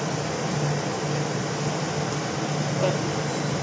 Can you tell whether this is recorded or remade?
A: recorded